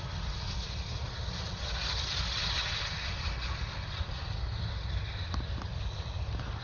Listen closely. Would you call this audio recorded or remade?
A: recorded